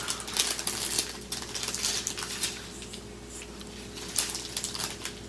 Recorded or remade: recorded